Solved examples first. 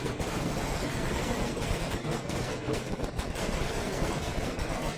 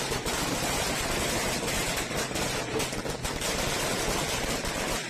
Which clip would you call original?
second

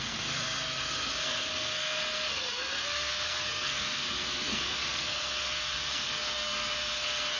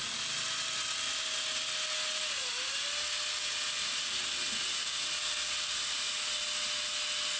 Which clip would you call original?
second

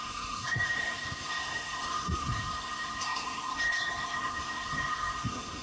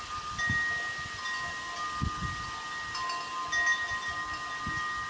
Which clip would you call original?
second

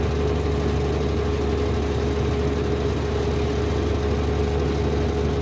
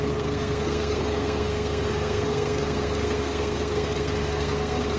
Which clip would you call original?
first